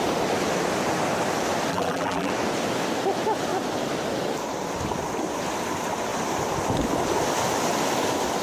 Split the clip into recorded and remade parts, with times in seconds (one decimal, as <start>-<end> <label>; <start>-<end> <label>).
0.0-1.7 recorded; 1.7-2.3 remade; 2.3-8.4 recorded